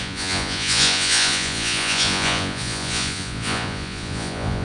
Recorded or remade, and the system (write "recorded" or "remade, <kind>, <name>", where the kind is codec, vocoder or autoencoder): remade, vocoder, Vocos